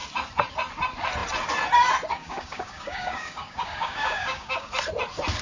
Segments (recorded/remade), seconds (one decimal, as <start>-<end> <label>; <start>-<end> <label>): 0.0-2.2 recorded; 2.2-4.7 remade; 4.7-5.4 recorded